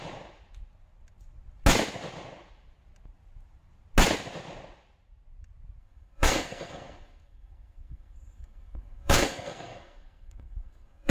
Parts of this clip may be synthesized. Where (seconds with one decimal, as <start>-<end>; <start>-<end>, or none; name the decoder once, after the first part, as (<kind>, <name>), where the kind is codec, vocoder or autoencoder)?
5.8-11.1 (codec, SNAC)